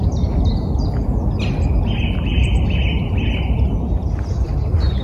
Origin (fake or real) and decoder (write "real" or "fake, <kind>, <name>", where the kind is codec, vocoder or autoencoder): real